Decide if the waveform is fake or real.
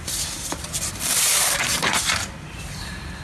fake